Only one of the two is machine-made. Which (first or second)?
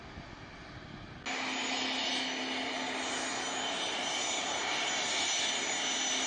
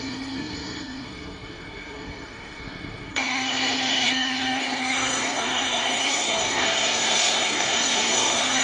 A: second